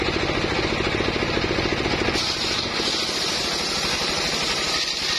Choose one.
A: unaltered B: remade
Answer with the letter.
A